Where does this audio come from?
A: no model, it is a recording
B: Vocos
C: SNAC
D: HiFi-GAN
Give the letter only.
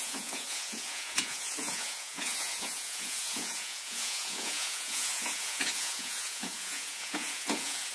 B